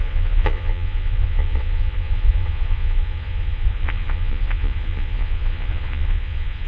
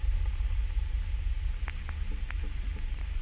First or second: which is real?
second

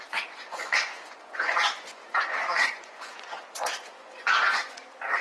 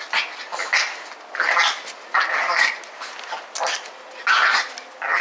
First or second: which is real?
second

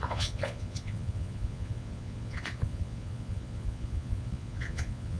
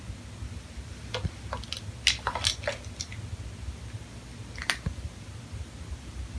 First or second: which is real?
second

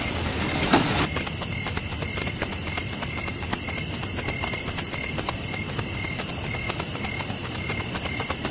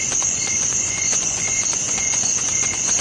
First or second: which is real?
first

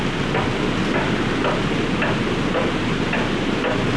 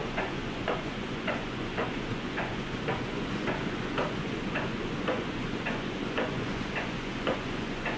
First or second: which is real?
first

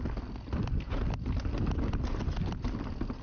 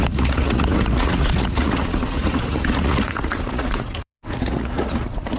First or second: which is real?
first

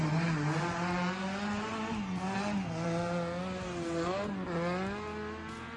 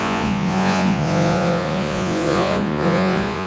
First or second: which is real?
first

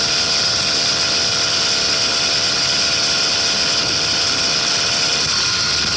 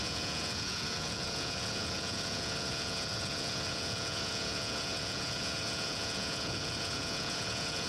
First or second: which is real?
first